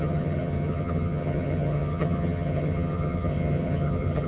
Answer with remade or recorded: remade